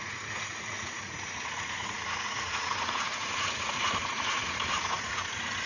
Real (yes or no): no